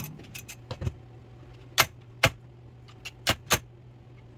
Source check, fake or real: real